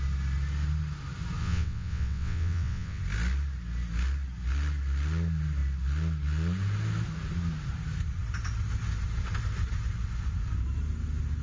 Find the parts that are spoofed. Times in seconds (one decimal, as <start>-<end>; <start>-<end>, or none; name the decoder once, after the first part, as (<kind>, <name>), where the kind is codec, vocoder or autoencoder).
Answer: 1.4-3.0 (vocoder, WaveNeXt)